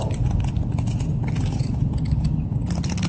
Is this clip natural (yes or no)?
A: yes